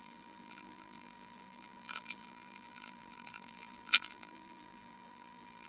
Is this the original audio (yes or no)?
no